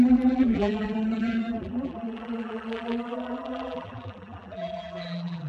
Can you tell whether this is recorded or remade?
remade